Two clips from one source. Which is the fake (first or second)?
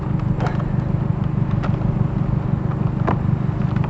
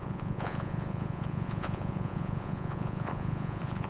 second